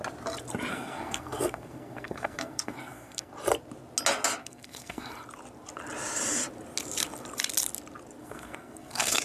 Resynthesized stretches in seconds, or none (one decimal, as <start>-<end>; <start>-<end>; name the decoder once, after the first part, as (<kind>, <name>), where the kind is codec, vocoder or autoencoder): 0.7-3.3 (codec, SNAC); 4.4-5.1; 8.2-9.2